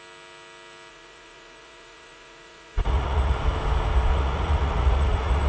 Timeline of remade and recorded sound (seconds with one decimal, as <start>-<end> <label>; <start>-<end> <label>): 0.0-0.9 recorded; 0.9-3.4 remade; 3.4-4.1 recorded; 4.1-5.5 remade